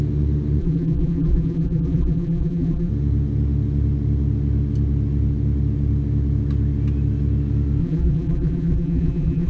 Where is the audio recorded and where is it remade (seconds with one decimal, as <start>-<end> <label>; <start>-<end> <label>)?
0.0-0.6 recorded; 0.6-2.9 remade; 2.9-7.8 recorded; 7.8-9.5 remade